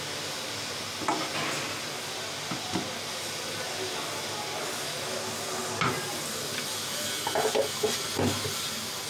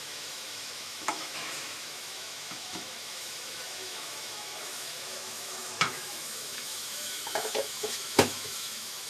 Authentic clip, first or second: first